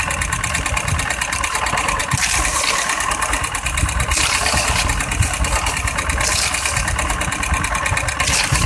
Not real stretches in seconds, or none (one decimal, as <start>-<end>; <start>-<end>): none